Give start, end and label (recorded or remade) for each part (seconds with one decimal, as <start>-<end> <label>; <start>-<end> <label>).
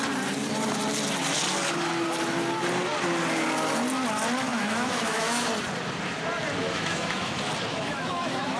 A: 0.0-4.5 recorded; 4.5-5.5 remade; 5.5-6.6 recorded; 6.6-7.3 remade; 7.3-7.7 recorded; 7.7-8.6 remade